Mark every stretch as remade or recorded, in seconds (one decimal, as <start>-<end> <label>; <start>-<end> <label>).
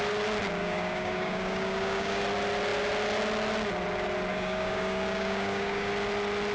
0.0-0.6 recorded; 0.6-2.2 remade; 2.2-4.3 recorded; 4.3-5.9 remade; 5.9-6.5 recorded